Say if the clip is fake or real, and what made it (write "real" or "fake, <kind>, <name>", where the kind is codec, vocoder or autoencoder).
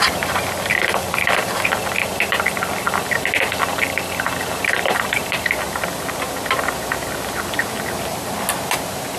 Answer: real